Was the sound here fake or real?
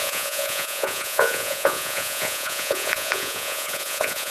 fake